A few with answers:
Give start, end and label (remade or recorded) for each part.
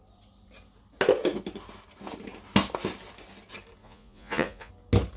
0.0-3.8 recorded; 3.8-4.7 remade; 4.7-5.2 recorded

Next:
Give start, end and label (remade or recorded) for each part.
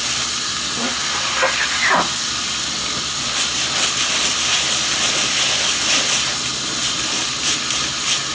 0.0-8.3 recorded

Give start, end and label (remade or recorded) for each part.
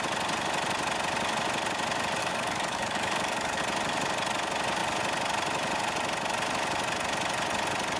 0.0-2.2 recorded; 2.2-3.6 remade; 3.6-8.0 recorded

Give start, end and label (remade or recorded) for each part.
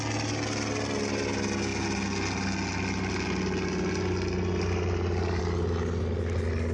0.0-6.7 recorded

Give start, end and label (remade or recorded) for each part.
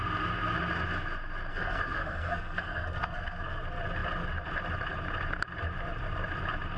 0.0-1.5 recorded; 1.5-3.6 remade; 3.6-6.8 recorded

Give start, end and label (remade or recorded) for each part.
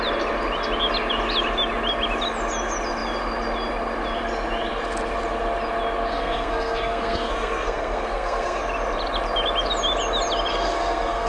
0.0-6.1 recorded; 6.1-8.6 remade; 8.6-10.5 recorded; 10.5-11.3 remade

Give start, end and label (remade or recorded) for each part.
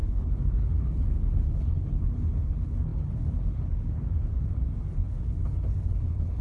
0.0-6.4 remade